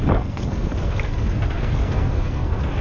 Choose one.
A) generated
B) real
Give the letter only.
A